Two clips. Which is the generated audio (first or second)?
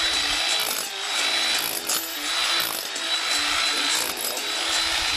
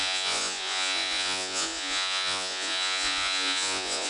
second